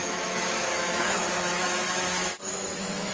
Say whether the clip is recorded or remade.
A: remade